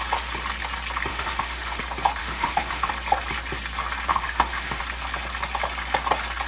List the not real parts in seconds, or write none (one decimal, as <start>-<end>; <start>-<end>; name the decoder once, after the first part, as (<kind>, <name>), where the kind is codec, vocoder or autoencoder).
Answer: 1.1-1.8 (autoencoder, DAC-VAE); 2.2-2.9; 4.1-4.8